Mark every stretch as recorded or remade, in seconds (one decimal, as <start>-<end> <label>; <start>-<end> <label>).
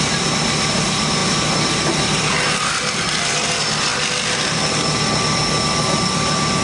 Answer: 0.0-6.6 recorded